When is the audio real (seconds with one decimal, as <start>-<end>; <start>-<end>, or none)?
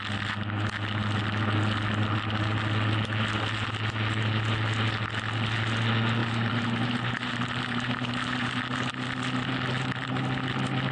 0.0-6.2; 8.6-10.9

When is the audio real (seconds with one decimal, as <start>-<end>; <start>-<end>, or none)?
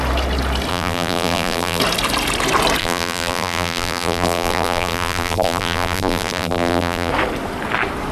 0.0-0.7; 1.8-2.8; 7.1-8.1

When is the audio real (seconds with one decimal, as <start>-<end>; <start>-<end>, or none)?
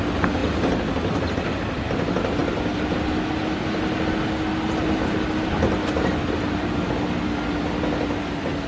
0.0-8.7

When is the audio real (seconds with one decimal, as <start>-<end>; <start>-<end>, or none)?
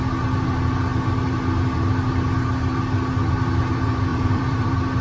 0.0-4.1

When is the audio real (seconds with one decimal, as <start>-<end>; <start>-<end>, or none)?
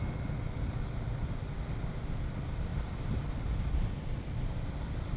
0.0-2.7; 3.3-5.2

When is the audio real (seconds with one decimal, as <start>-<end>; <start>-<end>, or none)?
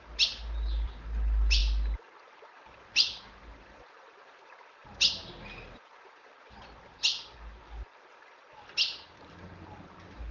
0.0-10.3